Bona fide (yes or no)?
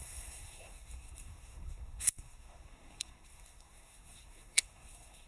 no